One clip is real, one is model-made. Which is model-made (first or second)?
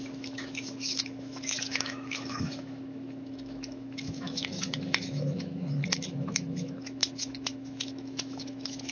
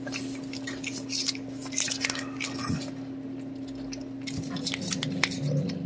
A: first